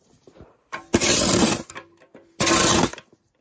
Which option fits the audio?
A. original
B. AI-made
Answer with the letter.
A